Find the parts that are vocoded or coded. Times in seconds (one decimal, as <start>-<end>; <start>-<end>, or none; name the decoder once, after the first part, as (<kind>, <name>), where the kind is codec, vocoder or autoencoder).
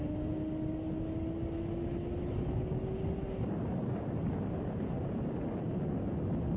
3.7-5.7 (vocoder, BigVGAN v2)